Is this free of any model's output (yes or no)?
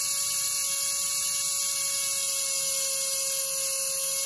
yes